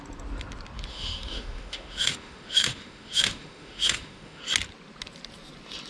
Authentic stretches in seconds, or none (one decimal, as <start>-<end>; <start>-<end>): 0.0-0.9; 4.4-5.9